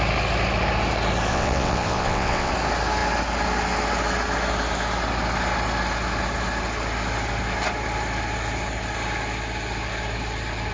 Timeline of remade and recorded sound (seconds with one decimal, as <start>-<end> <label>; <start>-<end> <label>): 0.0-1.3 recorded; 1.3-2.5 remade; 2.5-10.7 recorded